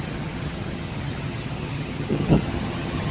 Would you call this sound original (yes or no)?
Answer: no